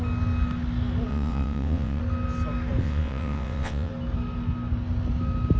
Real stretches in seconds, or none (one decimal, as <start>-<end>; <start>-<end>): 0.0-1.1; 2.0-2.8; 3.9-5.6